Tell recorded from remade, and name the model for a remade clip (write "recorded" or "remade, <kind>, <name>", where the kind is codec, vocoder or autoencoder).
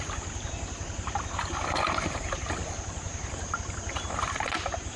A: recorded